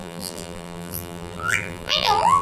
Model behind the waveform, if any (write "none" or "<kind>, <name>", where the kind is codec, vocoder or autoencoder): vocoder, BigVGAN v2